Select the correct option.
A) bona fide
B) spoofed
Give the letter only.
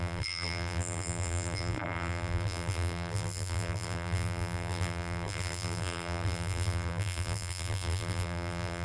B